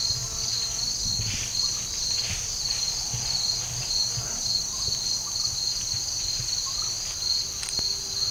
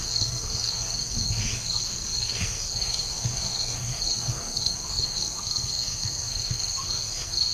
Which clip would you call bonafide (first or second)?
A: first